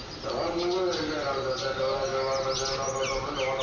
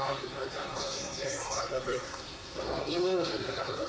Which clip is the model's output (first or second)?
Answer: second